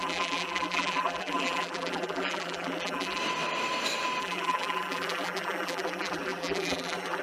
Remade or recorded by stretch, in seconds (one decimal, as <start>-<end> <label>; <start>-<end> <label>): 0.0-3.2 remade; 3.2-4.2 recorded; 4.2-7.2 remade